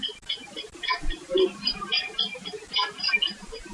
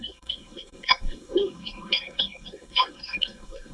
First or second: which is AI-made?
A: second